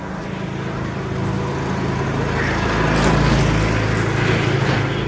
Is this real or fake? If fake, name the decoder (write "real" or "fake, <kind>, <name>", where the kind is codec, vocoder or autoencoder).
real